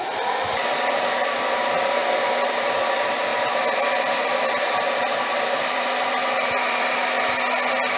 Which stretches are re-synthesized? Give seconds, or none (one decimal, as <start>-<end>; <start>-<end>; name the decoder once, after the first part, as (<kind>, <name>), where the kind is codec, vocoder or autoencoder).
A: 0.0-2.0 (vocoder, BigVGAN v2); 2.7-7.0